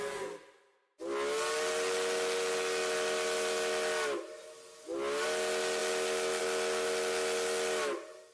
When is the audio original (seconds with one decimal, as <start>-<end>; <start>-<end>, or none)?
0.0-8.3